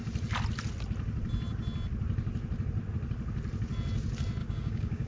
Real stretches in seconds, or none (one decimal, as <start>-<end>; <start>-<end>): 0.0-4.4